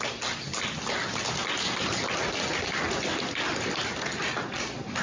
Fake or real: real